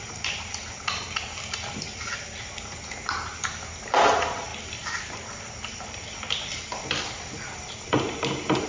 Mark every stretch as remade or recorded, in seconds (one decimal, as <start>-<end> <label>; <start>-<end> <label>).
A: 0.0-8.7 recorded